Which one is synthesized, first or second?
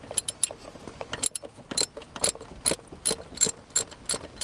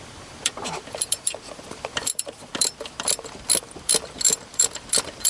second